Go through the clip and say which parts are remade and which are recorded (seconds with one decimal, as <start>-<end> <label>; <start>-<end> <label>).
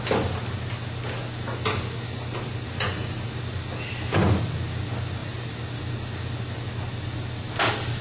0.0-5.2 recorded; 5.2-5.9 remade; 5.9-8.0 recorded